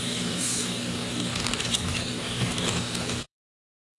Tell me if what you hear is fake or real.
fake